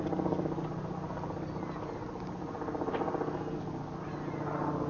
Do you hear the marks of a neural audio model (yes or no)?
no